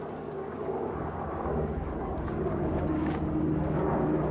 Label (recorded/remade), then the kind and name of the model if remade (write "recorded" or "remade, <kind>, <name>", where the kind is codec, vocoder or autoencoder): remade, codec, DAC